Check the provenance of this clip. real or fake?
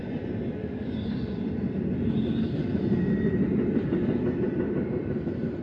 fake